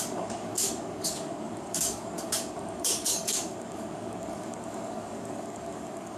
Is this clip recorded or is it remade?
remade